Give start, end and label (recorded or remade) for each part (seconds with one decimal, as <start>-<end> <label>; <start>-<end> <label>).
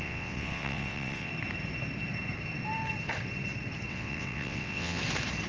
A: 0.0-1.3 remade; 1.3-3.9 recorded; 3.9-5.0 remade; 5.0-5.5 recorded